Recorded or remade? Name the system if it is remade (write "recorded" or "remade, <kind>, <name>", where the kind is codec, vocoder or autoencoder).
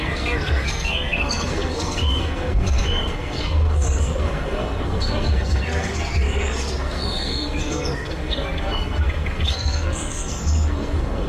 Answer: remade, codec, SNAC